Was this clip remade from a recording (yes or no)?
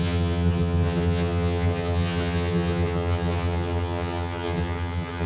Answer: yes